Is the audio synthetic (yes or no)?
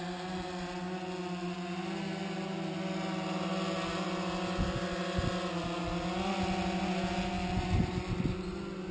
no